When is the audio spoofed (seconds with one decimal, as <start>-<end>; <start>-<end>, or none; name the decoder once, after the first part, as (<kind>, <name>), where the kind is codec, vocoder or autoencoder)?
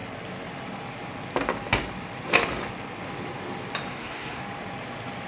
3.9-4.4 (codec, SNAC)